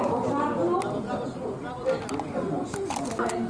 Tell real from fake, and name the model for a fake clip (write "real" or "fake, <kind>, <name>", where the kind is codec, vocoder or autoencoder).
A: real